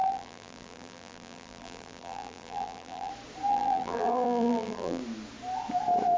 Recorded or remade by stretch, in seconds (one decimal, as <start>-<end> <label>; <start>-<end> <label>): 0.0-3.1 remade; 3.1-3.5 recorded; 3.5-5.0 remade; 5.0-6.2 recorded